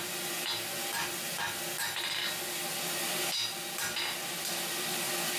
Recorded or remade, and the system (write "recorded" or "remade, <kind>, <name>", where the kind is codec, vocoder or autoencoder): recorded